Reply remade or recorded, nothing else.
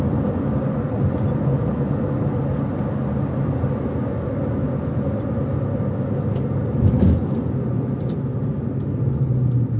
recorded